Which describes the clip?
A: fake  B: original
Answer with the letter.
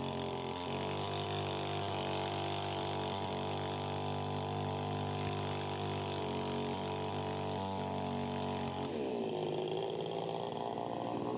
B